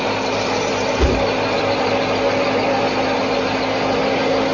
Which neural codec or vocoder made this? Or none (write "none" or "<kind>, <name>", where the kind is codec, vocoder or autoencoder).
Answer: none